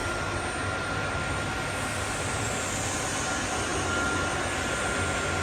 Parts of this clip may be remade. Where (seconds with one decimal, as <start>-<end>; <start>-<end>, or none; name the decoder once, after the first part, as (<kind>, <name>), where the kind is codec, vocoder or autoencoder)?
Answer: none